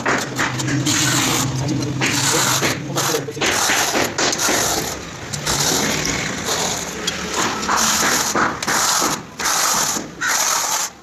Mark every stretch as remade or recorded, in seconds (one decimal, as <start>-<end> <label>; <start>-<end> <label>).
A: 0.0-11.0 recorded